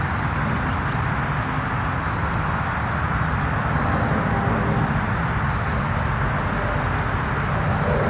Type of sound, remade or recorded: recorded